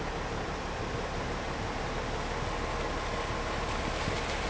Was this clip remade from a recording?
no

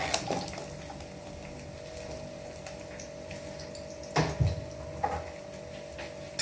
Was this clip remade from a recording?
no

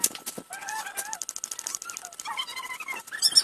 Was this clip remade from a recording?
no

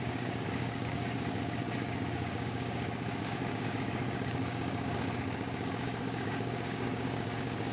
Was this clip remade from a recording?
yes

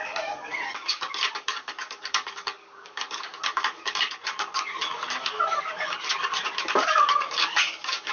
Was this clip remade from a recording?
yes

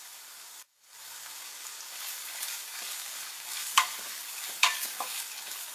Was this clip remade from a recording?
yes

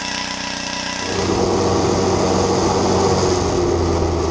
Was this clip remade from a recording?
no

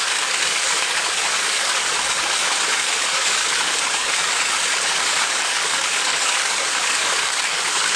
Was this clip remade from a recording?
yes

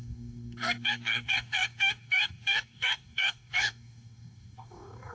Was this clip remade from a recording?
yes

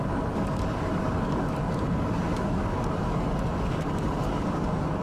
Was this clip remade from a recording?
yes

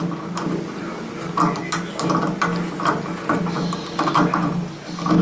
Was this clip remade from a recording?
no